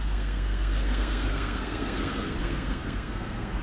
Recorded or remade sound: remade